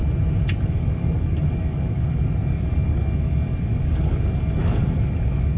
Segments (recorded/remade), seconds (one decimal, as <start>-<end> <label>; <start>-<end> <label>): 0.0-0.6 recorded; 0.6-5.6 remade